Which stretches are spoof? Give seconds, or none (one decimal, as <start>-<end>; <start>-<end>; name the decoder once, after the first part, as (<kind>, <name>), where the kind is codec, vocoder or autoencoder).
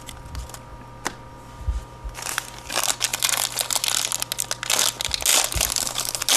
none